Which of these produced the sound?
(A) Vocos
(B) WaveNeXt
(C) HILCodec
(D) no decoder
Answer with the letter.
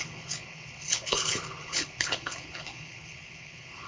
C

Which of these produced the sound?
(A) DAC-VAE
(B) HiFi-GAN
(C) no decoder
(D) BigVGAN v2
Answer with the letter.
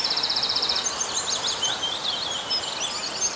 C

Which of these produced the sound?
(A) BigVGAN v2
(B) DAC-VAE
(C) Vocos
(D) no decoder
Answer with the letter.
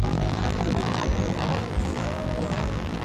A